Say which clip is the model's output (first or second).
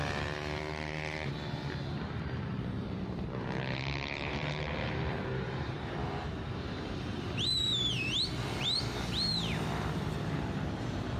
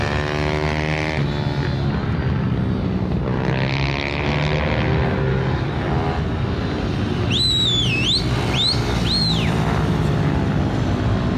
first